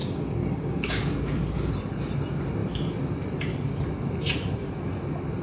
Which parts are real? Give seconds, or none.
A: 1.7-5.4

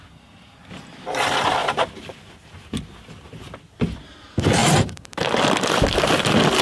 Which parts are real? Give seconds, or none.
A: 0.0-6.6

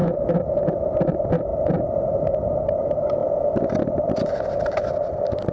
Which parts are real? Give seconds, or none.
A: 0.0-5.5

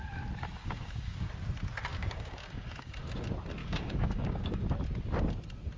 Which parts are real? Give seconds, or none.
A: 0.0-0.6; 1.3-1.9; 2.9-3.6; 4.6-5.8

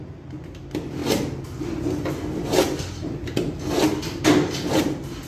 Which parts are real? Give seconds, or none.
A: 0.0-5.3